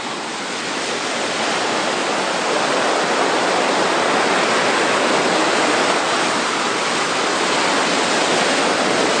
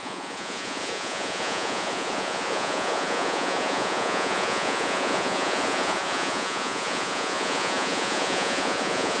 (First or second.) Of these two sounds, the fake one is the second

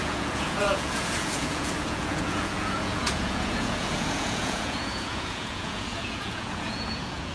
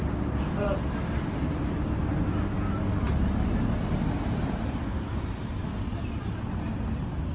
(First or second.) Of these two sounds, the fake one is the first